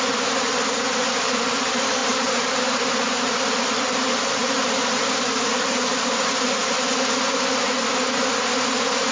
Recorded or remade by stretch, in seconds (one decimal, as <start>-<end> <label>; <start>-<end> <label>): 0.0-2.0 recorded; 2.0-2.9 remade; 2.9-5.5 recorded; 5.5-6.0 remade; 6.0-9.1 recorded